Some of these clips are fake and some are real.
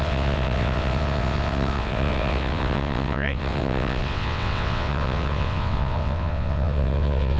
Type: fake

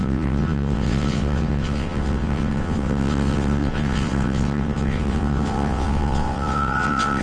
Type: fake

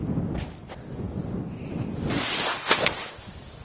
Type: real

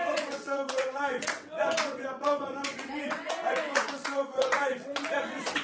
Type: fake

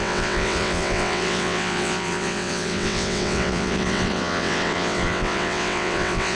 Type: fake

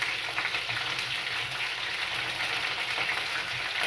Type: real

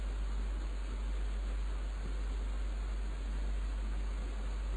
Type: real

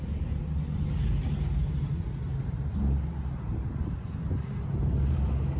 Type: real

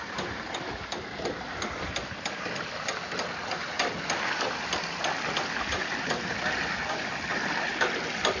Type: real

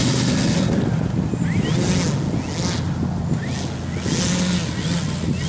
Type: real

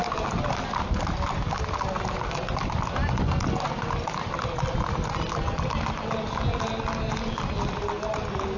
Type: real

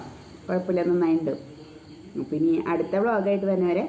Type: real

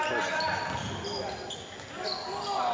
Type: real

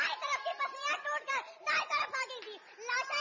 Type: real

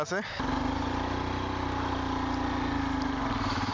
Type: real